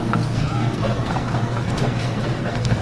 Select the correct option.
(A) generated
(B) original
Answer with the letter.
A